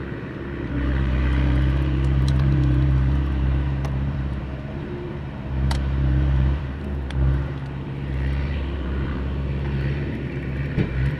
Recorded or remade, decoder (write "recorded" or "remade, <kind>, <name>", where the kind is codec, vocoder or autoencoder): remade, vocoder, BigVGAN v2